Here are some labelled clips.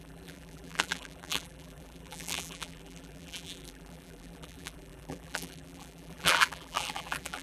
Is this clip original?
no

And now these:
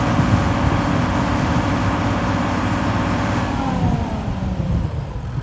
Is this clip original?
no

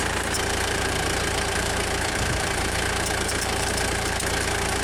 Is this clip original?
no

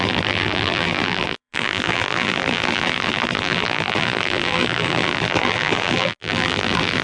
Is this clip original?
no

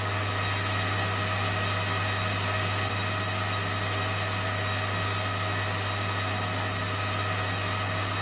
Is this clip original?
yes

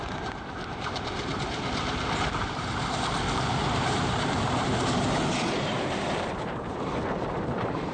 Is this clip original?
no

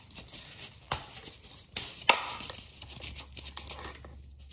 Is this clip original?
yes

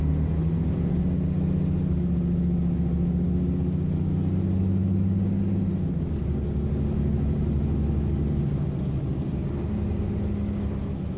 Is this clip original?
yes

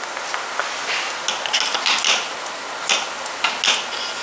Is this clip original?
yes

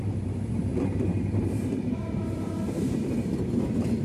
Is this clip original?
no